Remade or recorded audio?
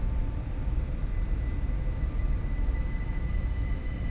remade